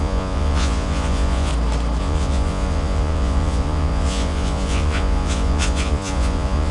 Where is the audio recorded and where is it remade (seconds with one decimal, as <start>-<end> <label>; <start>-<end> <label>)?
0.0-1.5 remade; 1.5-2.0 recorded; 2.0-6.7 remade